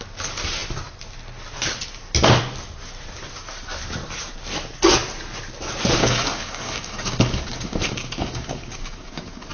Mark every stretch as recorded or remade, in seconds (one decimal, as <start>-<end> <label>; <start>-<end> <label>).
0.0-6.0 recorded; 6.0-9.5 remade